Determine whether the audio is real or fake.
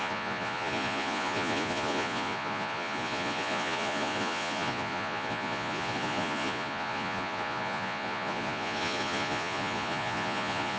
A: fake